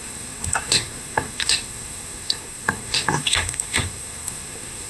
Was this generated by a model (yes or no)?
yes